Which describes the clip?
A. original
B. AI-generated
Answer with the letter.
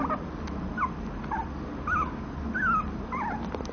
A